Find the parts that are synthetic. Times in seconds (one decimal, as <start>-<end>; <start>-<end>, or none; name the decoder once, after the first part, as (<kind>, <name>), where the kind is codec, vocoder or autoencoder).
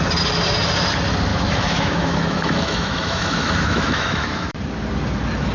1.3-4.6 (autoencoder, DAC-VAE)